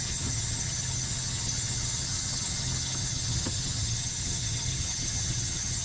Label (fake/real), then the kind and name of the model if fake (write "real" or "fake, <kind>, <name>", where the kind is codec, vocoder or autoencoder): fake, vocoder, HiFi-GAN